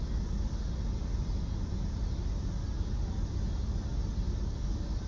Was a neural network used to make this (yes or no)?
no